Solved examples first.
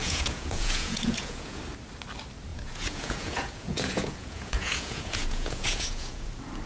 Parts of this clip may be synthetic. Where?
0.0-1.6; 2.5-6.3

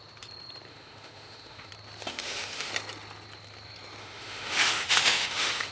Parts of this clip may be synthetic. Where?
0.7-1.7; 2.1-2.7; 4.0-5.7

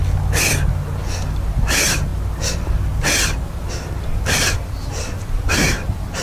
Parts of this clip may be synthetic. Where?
1.3-2.1; 4.2-6.2